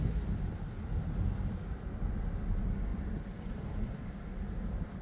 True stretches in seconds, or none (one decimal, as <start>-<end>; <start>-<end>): 0.0-2.9; 3.8-5.0